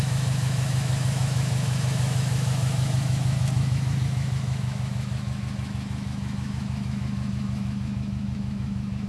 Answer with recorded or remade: remade